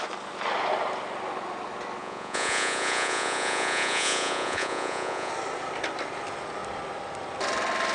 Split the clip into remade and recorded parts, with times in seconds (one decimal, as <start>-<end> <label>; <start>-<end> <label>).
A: 0.0-2.0 recorded; 2.0-5.3 remade; 5.3-7.9 recorded